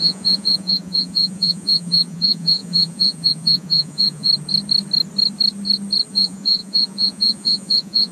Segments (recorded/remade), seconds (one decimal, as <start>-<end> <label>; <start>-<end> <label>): 0.0-4.3 remade; 4.3-6.1 recorded; 6.1-8.1 remade